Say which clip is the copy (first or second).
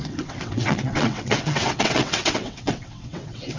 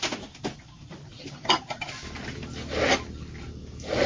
first